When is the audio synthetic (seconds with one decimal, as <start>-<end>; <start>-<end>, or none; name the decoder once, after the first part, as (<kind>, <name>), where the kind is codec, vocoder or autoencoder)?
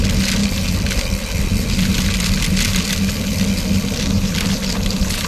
none